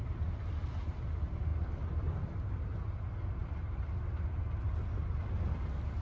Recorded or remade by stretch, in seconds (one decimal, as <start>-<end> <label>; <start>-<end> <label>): 0.0-6.0 recorded